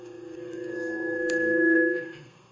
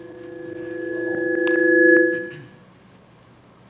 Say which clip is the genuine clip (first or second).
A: second